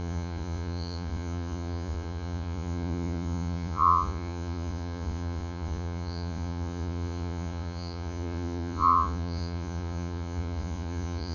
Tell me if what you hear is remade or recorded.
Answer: remade